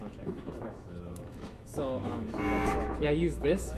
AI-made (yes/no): yes